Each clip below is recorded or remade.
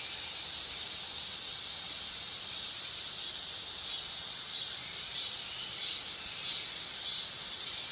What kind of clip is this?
recorded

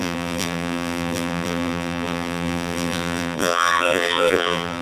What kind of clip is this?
remade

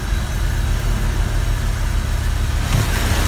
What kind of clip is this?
recorded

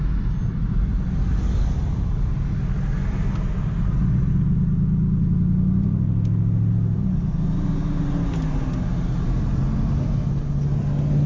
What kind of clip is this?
recorded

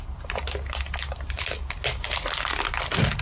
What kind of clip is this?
recorded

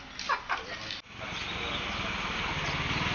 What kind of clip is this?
recorded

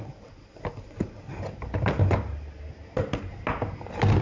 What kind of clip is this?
recorded